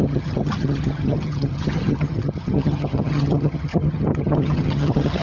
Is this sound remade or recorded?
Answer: remade